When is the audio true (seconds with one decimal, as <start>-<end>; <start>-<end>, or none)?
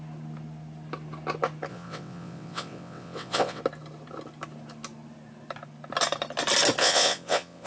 0.0-1.7; 3.6-6.8